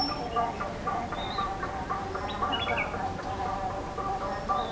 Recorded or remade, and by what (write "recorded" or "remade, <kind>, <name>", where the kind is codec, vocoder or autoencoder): recorded